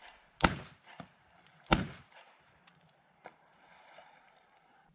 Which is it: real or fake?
fake